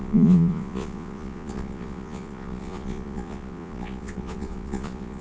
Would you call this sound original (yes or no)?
no